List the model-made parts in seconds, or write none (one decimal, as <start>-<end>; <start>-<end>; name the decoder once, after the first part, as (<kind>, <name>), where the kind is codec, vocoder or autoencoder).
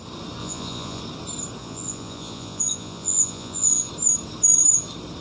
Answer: 0.4-1.0 (vocoder, Vocos); 1.6-3.9